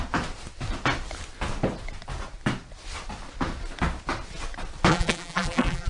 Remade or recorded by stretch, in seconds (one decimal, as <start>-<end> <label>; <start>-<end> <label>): 0.0-4.9 recorded; 4.9-5.9 remade